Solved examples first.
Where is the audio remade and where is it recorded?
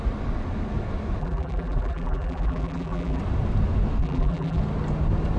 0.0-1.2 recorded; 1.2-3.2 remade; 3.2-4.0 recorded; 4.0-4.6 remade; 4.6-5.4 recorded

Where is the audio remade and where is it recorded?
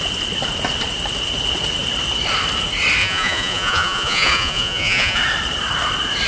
0.0-3.0 recorded; 3.0-5.2 remade; 5.2-6.3 recorded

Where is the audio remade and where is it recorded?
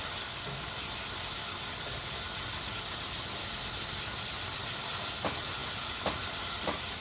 0.0-7.0 recorded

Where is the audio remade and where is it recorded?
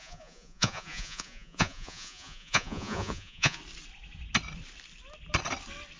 0.0-3.6 remade; 3.6-6.0 recorded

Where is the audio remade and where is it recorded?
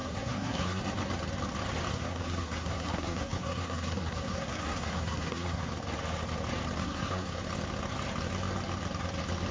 0.0-0.8 remade; 0.8-1.9 recorded; 1.9-5.7 remade; 5.7-6.8 recorded; 6.8-7.4 remade; 7.4-9.5 recorded